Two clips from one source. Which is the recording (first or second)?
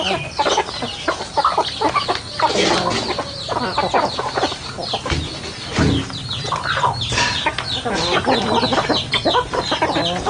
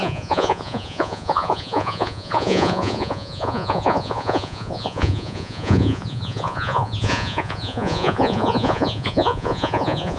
first